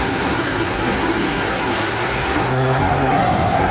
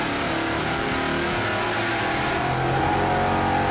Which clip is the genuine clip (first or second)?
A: second